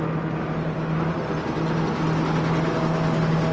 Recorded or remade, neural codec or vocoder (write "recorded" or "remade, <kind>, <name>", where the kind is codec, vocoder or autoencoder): recorded